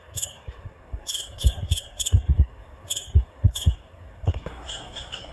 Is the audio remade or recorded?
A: remade